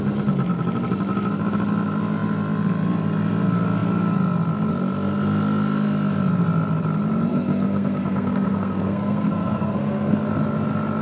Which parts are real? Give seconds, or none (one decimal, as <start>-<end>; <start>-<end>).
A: 0.0-7.3; 10.1-11.0